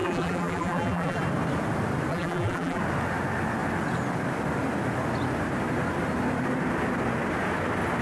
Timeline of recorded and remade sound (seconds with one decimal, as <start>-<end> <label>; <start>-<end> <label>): 0.0-1.2 remade; 1.2-2.1 recorded; 2.1-2.8 remade; 2.8-8.0 recorded

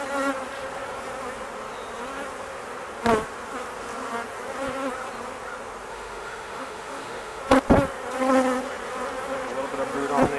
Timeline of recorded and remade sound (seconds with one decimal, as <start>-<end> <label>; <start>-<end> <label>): 0.0-5.9 recorded; 5.9-7.4 remade; 7.4-10.4 recorded

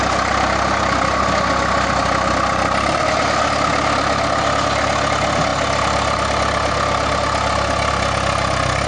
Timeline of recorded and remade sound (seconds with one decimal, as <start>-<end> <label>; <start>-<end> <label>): 0.0-8.9 recorded

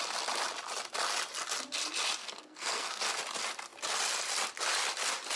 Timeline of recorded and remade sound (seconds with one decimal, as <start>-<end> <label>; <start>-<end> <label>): 0.0-2.2 recorded; 2.2-3.0 remade; 3.0-5.4 recorded

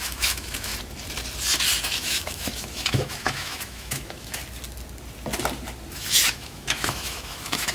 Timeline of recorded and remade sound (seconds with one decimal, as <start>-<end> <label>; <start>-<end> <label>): 0.0-0.7 remade; 0.7-1.8 recorded; 1.8-4.4 remade; 4.4-5.9 recorded; 5.9-7.7 remade

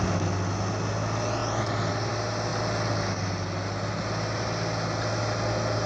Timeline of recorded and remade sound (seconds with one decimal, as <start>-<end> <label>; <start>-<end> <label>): 0.0-5.9 recorded

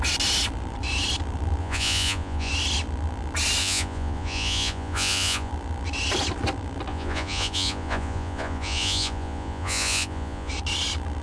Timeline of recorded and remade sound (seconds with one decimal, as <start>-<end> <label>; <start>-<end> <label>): 0.0-1.6 recorded; 1.6-2.5 remade; 2.5-3.6 recorded; 3.6-5.5 remade; 5.5-6.9 recorded; 6.9-10.5 remade; 10.5-11.2 recorded